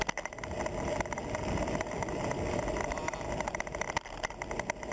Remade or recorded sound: recorded